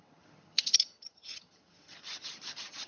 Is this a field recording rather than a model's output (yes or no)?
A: no